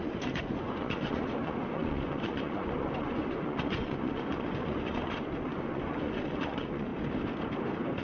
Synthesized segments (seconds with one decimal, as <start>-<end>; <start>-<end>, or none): 0.0-6.9